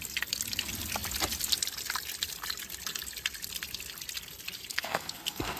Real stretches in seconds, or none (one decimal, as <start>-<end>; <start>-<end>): 0.0-4.7